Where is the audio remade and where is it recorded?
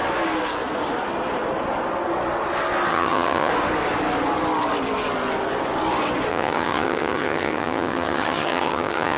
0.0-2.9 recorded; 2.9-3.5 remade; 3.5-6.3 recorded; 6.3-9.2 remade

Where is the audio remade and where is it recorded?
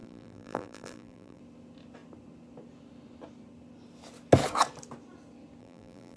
0.0-1.4 remade; 1.4-5.6 recorded; 5.6-6.2 remade